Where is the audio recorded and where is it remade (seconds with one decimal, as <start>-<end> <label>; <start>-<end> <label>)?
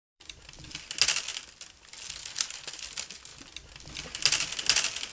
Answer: 0.0-0.6 remade; 0.6-5.1 recorded